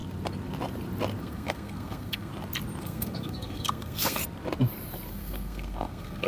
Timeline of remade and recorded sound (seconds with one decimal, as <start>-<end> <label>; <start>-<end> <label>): 0.0-1.2 recorded; 1.2-2.3 remade; 2.3-2.8 recorded; 2.8-4.2 remade; 4.2-5.1 recorded; 5.1-6.3 remade